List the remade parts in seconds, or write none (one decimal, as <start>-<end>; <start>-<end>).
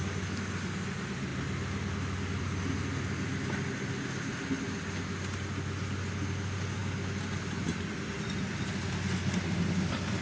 none